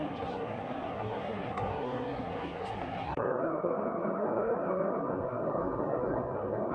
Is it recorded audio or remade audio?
remade